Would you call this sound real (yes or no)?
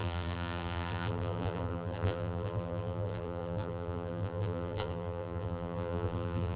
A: no